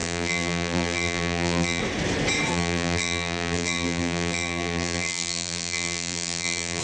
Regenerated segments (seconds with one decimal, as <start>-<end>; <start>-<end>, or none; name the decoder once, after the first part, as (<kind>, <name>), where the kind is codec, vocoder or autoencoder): 0.0-1.8 (vocoder, BigVGAN v2); 2.5-6.8